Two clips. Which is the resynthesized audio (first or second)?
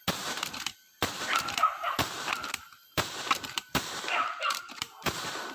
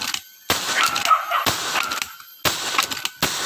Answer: first